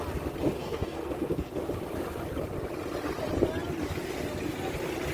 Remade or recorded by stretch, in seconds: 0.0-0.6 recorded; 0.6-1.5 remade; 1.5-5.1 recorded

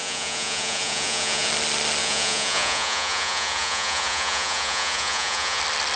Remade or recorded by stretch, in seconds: 0.0-1.5 remade; 1.5-2.0 recorded; 2.0-5.6 remade; 5.6-6.0 recorded

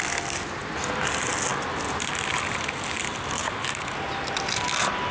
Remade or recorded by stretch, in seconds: 0.0-5.1 recorded

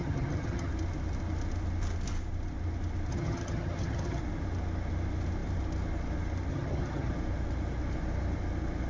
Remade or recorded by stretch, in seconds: 0.0-0.7 remade; 0.7-3.1 recorded; 3.1-4.2 remade; 4.2-6.5 recorded; 6.5-7.1 remade; 7.1-8.9 recorded